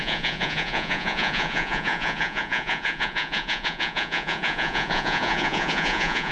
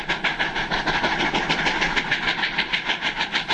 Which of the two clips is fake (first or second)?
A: first